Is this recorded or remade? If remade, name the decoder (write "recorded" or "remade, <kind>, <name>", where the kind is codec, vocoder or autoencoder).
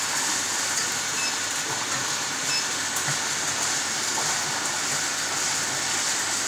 recorded